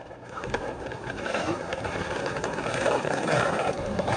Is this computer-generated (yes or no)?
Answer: yes